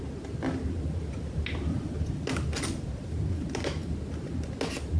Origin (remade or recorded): recorded